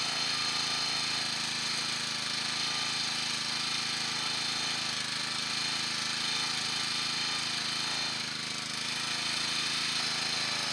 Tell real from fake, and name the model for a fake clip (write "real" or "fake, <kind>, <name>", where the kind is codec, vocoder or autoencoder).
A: real